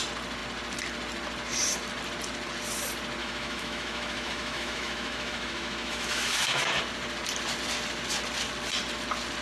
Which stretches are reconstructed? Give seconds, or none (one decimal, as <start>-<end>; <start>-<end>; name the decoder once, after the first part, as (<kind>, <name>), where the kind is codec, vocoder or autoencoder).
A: 3.2-6.8 (autoencoder, DAC-VAE)